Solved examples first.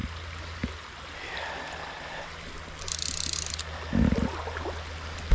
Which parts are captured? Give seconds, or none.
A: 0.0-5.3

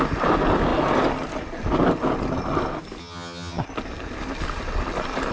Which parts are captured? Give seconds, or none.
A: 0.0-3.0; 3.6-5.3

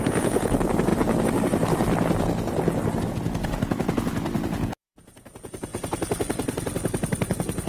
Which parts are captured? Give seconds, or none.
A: 0.9-3.1; 4.3-4.8; 5.7-7.7

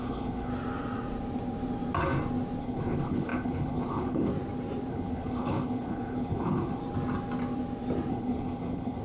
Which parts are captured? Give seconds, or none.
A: 0.5-2.6; 4.3-4.9; 6.8-8.1

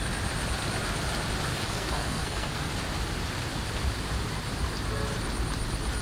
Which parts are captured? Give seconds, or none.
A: 0.0-1.5; 2.7-6.0